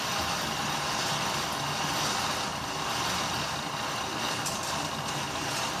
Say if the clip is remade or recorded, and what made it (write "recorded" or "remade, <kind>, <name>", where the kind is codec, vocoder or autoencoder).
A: recorded